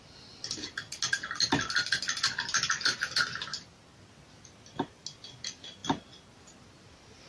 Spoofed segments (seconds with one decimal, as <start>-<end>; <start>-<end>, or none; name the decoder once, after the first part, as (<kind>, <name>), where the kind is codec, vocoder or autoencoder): none